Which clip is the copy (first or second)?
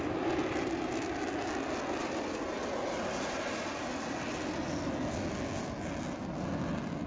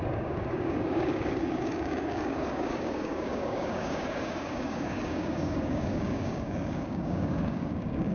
second